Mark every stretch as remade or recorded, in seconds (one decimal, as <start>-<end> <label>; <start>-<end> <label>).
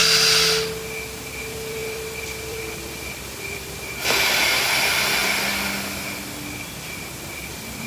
0.0-1.4 recorded; 1.4-5.2 remade; 5.2-7.5 recorded; 7.5-7.9 remade